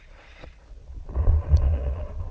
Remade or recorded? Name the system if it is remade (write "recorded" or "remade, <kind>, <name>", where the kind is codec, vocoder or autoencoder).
remade, vocoder, Vocos